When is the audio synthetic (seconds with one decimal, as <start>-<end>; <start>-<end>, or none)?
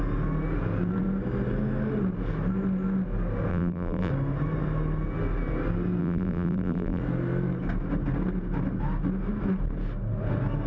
3.5-4.1; 6.0-7.0